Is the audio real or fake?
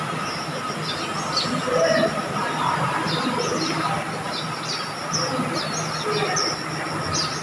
real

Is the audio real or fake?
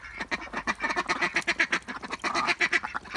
real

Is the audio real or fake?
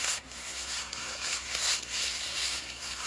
fake